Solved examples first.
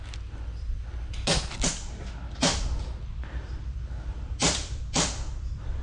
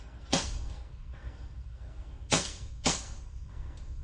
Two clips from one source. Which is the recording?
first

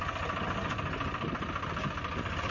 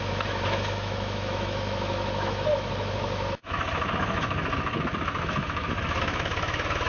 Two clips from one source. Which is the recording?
first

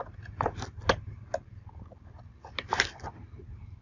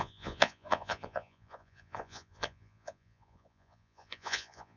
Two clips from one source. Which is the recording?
first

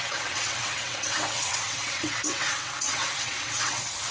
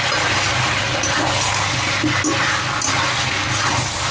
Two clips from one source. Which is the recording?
second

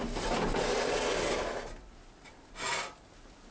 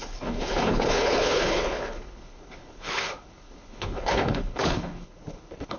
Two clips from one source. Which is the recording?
first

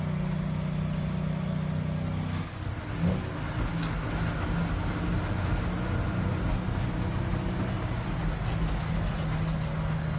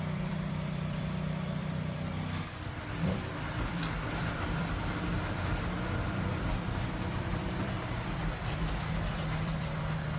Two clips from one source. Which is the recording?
first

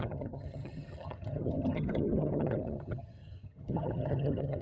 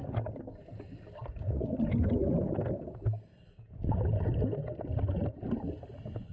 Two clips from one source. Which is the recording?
second